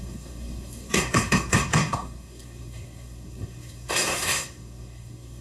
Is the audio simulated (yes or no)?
yes